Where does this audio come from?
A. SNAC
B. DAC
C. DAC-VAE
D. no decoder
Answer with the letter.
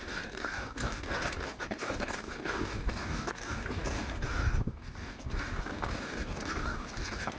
B